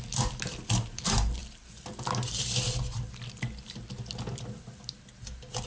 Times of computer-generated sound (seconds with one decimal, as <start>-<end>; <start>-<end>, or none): none